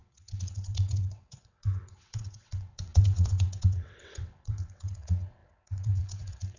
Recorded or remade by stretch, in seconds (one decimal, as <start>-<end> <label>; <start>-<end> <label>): 0.0-6.6 remade